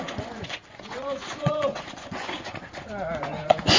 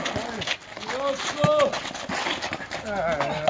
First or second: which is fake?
first